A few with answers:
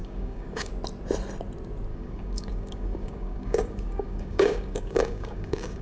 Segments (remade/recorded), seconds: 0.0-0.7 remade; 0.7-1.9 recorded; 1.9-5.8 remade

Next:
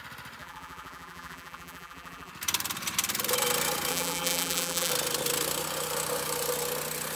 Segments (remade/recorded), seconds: 0.0-0.4 recorded; 0.4-2.3 remade; 2.3-3.9 recorded; 3.9-4.9 remade; 4.9-7.2 recorded

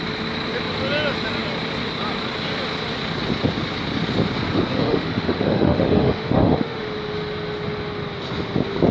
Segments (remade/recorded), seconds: 0.0-4.7 recorded; 4.7-6.8 remade; 6.8-8.9 recorded

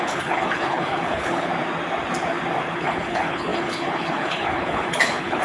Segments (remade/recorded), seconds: 0.0-1.5 remade; 1.5-2.7 recorded; 2.7-5.4 remade

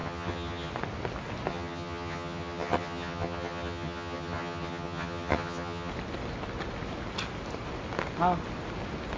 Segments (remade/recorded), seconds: 0.0-0.7 remade; 0.7-1.5 recorded; 1.5-5.9 remade; 5.9-9.2 recorded